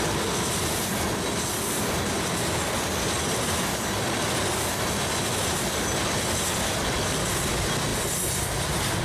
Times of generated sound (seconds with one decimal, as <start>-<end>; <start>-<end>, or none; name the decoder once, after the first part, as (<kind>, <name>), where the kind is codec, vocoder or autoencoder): none